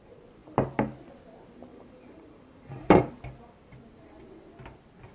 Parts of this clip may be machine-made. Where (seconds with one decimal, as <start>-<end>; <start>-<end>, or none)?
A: 1.7-3.1